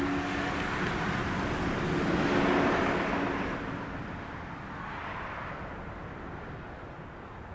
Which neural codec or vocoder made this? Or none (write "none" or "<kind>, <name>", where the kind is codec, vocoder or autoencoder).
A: none